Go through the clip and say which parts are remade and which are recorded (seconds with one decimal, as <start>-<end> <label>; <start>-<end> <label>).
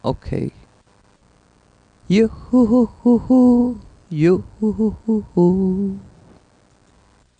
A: 0.0-7.4 recorded